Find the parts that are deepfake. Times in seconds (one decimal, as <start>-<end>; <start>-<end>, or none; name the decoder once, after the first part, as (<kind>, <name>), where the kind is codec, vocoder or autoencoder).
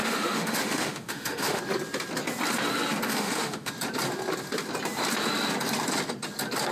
0.0-1.6 (autoencoder, DAC-VAE); 3.1-3.7